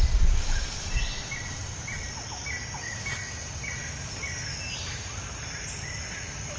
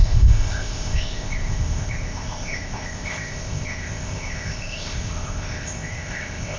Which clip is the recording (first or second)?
first